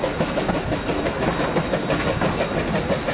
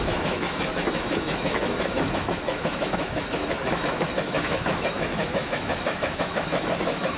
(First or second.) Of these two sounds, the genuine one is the first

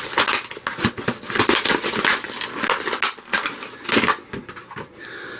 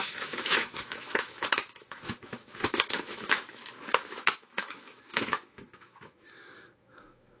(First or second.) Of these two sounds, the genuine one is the first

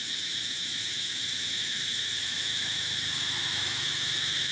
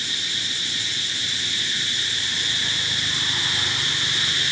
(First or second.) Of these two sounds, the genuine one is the second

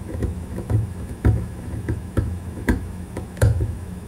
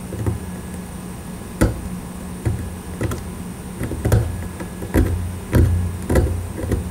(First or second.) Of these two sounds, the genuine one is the second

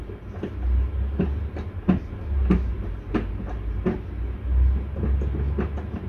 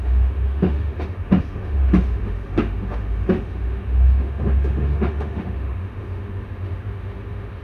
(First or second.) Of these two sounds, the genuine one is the first